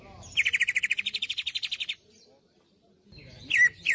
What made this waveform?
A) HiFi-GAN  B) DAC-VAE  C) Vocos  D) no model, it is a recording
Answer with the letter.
D